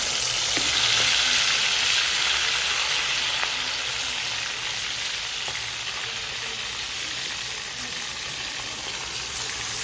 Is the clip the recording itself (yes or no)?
yes